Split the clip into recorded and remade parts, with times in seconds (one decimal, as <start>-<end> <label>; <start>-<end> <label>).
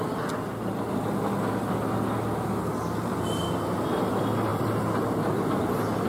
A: 0.0-4.5 recorded; 4.5-6.1 remade